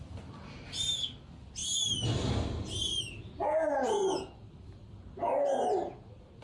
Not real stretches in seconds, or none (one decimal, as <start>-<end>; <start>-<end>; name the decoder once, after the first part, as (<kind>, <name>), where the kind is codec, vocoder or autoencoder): none